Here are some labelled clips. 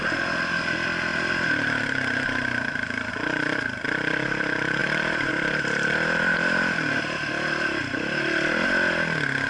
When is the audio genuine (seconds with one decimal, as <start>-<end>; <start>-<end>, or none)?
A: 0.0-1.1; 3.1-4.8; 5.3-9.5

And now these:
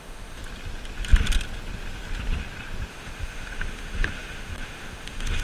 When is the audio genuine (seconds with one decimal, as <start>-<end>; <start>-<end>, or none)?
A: 0.4-2.9

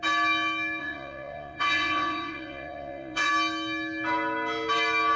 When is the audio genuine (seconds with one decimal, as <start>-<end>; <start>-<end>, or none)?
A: 0.0-0.8; 3.3-5.2